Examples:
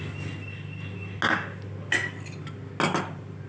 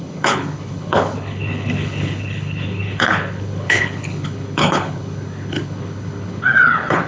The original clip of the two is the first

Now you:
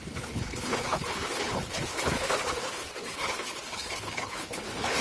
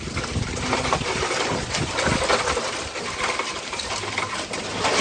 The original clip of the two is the second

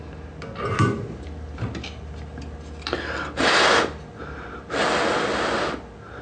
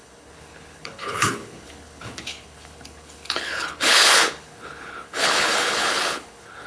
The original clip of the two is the first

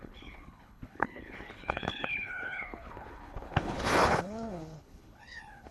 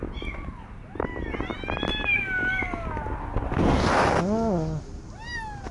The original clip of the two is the second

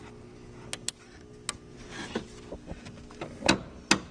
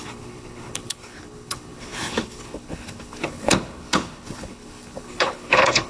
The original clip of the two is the first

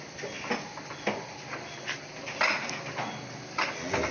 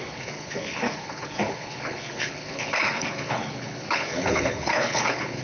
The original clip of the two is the first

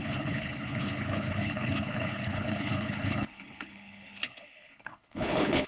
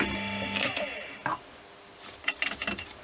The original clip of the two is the second